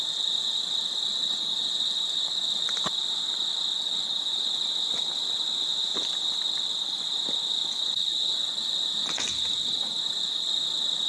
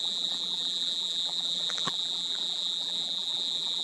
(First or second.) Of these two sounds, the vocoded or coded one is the second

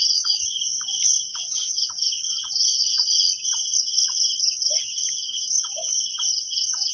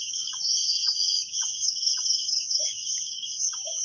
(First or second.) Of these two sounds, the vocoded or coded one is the second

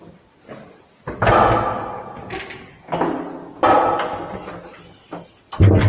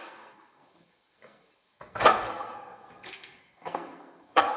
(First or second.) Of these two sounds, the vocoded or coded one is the second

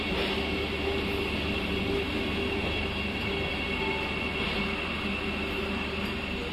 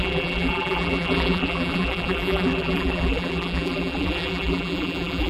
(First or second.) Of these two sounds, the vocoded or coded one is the second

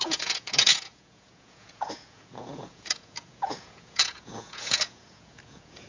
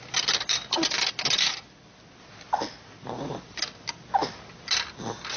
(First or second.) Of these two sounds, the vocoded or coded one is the first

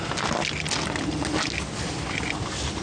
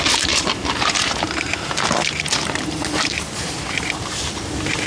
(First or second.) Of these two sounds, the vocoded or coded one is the second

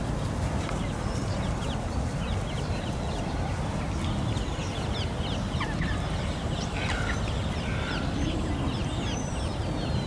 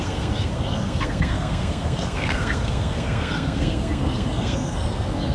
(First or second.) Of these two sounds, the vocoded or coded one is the second